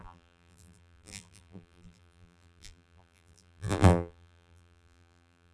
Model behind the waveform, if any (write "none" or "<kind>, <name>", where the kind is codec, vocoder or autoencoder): vocoder, BigVGAN v2